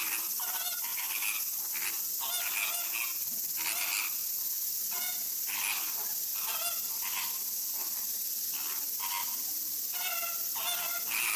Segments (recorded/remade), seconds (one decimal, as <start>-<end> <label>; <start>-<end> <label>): 0.0-11.4 recorded